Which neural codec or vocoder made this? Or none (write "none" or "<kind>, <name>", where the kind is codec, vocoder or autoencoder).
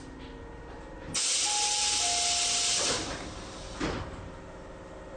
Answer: none